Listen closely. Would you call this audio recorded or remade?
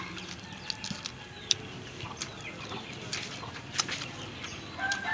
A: recorded